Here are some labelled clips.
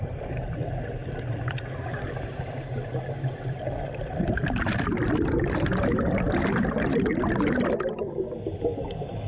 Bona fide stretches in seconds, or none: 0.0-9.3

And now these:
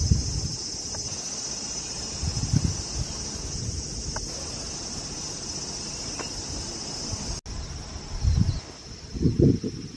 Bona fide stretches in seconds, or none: 0.0-10.0

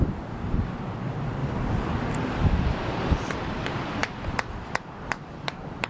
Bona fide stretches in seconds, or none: none

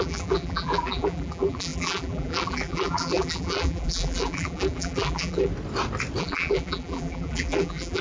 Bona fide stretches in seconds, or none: 5.5-6.2